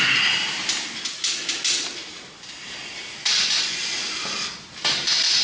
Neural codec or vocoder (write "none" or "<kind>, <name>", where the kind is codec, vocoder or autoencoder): none